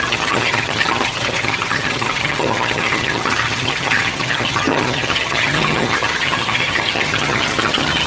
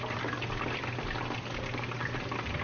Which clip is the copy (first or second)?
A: first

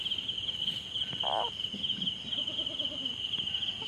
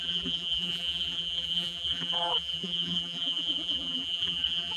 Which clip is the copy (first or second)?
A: second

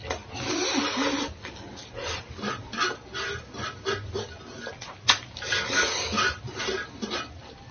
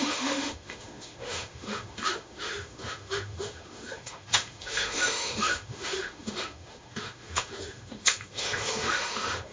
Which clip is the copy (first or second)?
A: second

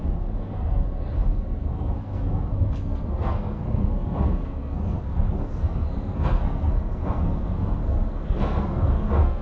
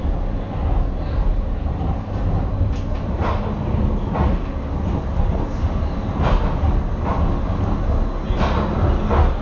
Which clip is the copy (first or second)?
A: first